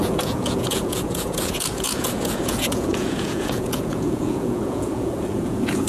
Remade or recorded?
remade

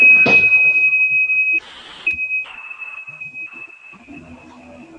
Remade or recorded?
recorded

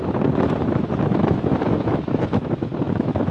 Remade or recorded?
remade